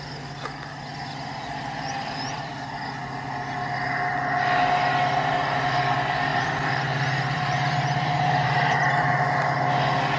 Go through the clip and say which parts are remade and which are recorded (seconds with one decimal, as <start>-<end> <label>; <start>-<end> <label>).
0.0-0.9 recorded; 0.9-2.5 remade; 2.5-6.3 recorded; 6.3-9.1 remade; 9.1-10.2 recorded

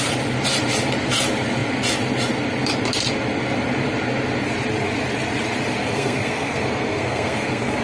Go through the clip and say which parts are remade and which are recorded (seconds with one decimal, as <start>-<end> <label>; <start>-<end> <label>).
0.0-5.8 recorded; 5.8-7.8 remade

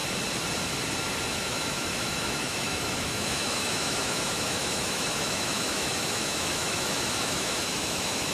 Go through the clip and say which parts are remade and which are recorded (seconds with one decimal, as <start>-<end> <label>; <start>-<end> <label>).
0.0-1.3 recorded; 1.3-8.3 remade

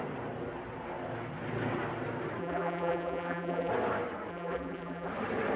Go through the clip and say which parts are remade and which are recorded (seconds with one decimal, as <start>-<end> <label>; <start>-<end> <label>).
0.0-2.4 recorded; 2.4-3.7 remade; 3.7-4.3 recorded; 4.3-5.1 remade; 5.1-5.6 recorded

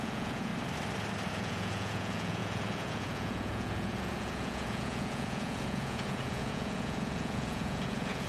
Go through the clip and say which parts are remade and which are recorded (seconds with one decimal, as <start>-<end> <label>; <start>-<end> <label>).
0.0-0.5 remade; 0.5-1.3 recorded; 1.3-8.3 remade

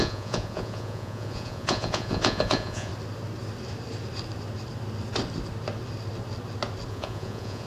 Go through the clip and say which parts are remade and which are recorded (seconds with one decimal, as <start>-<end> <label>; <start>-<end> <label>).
0.0-2.9 remade; 2.9-6.9 recorded; 6.9-7.7 remade

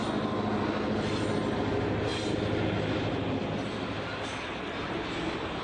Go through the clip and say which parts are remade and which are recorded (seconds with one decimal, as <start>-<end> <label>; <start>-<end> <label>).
0.0-5.6 recorded

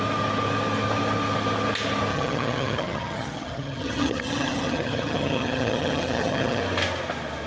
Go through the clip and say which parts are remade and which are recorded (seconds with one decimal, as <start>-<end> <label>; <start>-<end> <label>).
0.0-2.1 recorded; 2.1-6.6 remade; 6.6-7.5 recorded